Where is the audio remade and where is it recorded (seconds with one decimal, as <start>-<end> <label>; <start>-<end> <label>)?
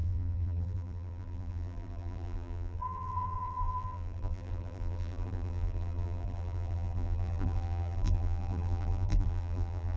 0.0-10.0 remade